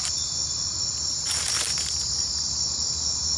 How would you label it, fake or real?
real